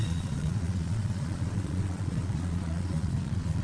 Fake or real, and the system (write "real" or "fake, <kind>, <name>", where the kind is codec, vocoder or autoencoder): fake, vocoder, Vocos